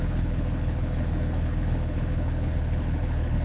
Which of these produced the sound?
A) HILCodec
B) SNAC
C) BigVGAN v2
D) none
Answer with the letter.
A